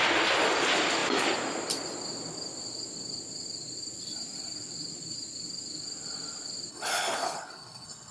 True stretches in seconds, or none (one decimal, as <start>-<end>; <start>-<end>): 0.0-6.7